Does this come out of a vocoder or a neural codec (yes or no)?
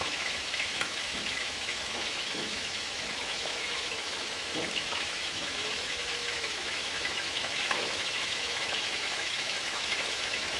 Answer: yes